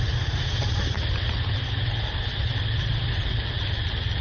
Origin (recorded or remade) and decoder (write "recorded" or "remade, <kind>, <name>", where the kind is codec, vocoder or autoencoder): recorded